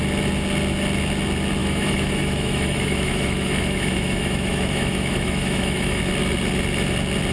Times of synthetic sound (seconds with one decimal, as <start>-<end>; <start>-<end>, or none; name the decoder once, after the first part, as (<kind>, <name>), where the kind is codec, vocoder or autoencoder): 1.6-6.0 (autoencoder, DAC-VAE)